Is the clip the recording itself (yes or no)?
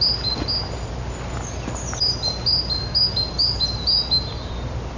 yes